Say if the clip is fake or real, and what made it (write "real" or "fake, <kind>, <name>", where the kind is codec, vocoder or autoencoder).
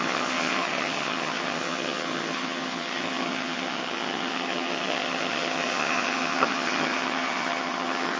fake, vocoder, HiFi-GAN